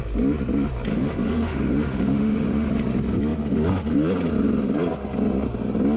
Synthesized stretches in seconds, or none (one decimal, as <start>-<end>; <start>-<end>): 0.9-2.7